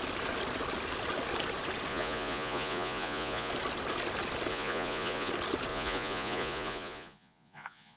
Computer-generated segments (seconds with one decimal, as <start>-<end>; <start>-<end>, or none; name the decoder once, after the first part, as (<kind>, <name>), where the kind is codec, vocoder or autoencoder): 1.9-3.5 (vocoder, Vocos); 4.5-5.3; 5.7-8.0